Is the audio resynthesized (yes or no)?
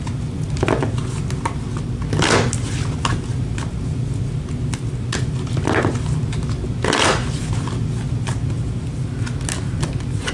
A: no